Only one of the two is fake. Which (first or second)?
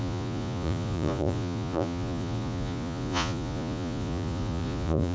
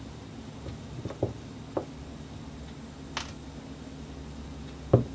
first